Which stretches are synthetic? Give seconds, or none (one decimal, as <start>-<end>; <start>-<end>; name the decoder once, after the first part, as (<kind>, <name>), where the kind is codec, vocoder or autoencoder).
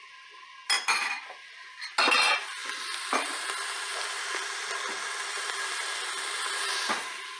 none